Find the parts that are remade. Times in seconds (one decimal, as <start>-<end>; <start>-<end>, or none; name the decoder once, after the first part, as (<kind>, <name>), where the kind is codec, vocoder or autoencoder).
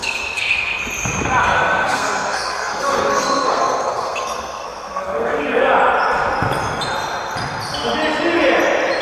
0.0-0.8 (codec, SNAC); 1.4-5.6